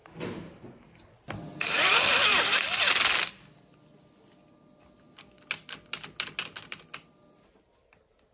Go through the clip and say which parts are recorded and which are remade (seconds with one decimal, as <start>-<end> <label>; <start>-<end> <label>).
0.0-8.3 recorded